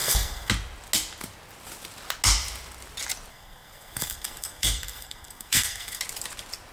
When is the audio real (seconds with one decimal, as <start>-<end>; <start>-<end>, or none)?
0.5-3.3; 6.0-6.7

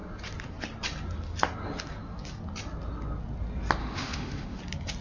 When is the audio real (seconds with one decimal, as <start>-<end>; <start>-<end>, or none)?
0.0-3.8; 4.6-5.0

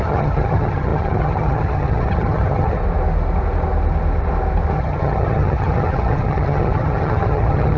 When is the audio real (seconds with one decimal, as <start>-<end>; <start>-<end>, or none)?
2.8-4.7

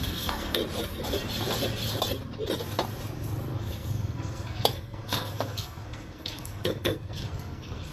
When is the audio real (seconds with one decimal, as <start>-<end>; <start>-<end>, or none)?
0.6-3.6

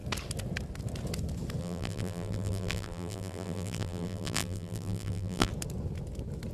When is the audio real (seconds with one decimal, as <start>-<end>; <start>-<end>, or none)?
0.0-1.6; 5.5-6.5

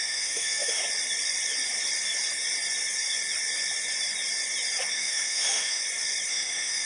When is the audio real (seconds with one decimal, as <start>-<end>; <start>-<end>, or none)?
0.8-4.9; 5.8-6.3

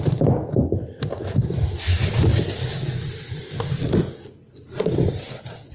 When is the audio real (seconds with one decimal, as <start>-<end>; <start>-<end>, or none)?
0.0-5.7

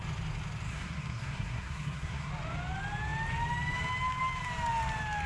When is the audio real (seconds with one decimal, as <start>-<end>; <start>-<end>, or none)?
0.0-0.7; 2.3-5.3